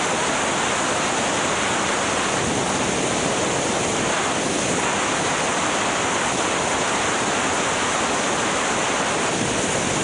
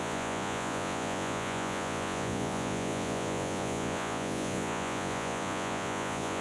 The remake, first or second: second